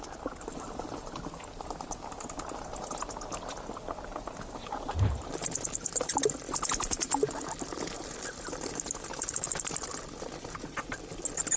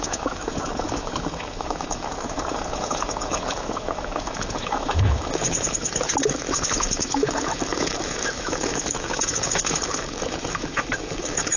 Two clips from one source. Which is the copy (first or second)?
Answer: second